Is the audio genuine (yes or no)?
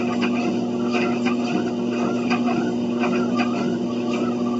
yes